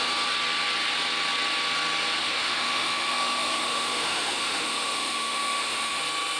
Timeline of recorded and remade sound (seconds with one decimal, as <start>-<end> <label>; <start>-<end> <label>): 0.0-2.2 recorded; 2.2-6.0 remade; 6.0-6.4 recorded